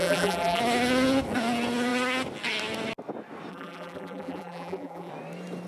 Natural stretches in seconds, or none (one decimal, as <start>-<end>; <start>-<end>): 0.6-3.5; 5.1-5.7